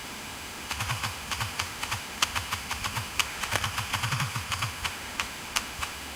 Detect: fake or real fake